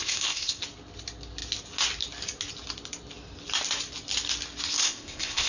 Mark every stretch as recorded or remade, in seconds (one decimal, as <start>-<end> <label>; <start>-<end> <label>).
0.0-0.6 remade; 0.6-4.8 recorded; 4.8-5.5 remade